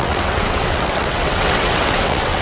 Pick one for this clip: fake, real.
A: fake